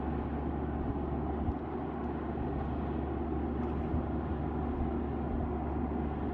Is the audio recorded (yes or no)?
yes